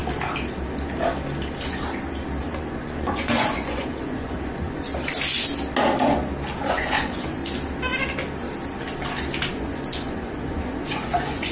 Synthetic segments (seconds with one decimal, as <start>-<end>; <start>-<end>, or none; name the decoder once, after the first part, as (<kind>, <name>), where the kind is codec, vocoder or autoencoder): 2.4-4.9 (vocoder, Vocos); 6.6-7.4; 9.5-11.5